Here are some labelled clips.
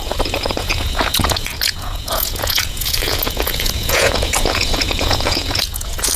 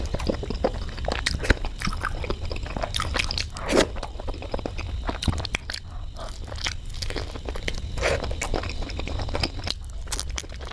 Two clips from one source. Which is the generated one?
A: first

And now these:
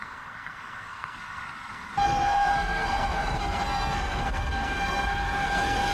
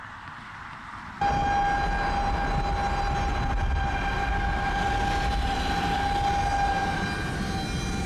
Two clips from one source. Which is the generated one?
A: first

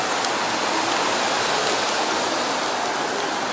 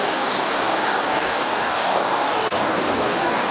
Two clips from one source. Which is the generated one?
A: second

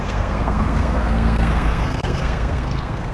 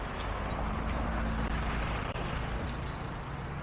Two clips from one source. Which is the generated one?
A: first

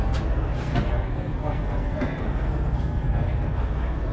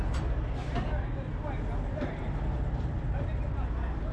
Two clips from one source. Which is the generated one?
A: first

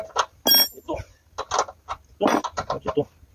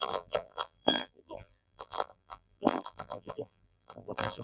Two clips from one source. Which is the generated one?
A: second